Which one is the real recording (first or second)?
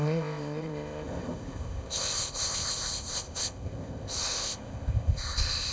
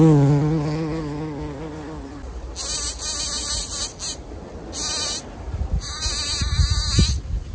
second